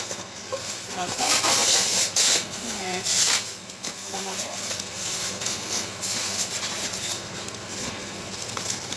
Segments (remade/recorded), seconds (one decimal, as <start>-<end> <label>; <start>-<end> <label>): 0.0-6.5 remade; 6.5-7.0 recorded; 7.0-9.0 remade